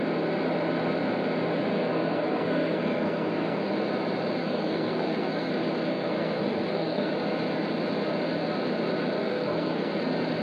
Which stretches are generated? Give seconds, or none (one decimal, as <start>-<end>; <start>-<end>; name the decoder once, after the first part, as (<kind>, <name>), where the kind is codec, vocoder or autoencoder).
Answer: 1.7-3.7 (codec, SNAC); 4.4-5.5; 5.9-7.1; 9.2-10.0